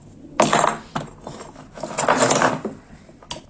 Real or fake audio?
real